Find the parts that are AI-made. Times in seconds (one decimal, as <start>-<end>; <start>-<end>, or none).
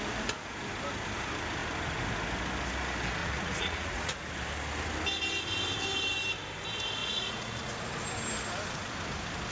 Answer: 3.2-4.3; 7.0-7.7